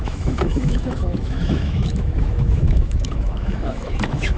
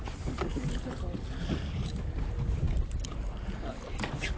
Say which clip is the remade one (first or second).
first